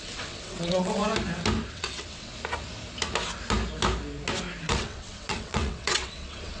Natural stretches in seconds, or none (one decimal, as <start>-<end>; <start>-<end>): 1.0-1.7; 2.3-4.6